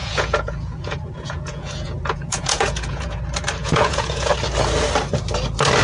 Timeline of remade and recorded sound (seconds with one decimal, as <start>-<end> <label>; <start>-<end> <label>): 0.0-3.2 remade; 3.2-3.6 recorded; 3.6-4.3 remade; 4.3-5.8 recorded